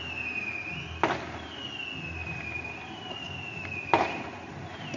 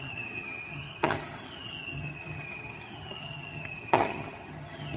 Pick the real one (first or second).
first